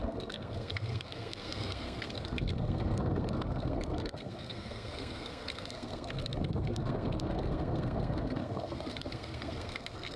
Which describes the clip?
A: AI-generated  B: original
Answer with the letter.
A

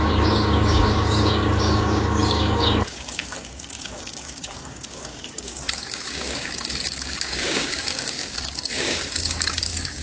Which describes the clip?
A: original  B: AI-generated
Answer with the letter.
B